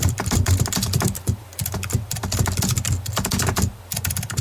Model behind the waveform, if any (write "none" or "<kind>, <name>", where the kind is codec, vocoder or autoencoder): none